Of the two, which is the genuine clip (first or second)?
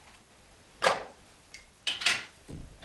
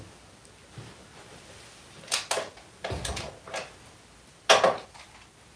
second